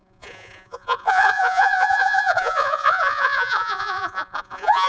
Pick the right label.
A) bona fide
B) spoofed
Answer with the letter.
B